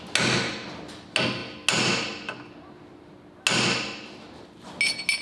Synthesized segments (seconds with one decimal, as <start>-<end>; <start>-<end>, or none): none